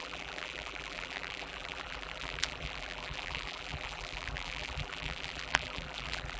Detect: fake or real fake